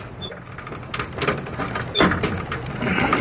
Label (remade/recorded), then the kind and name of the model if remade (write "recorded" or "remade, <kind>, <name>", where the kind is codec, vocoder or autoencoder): recorded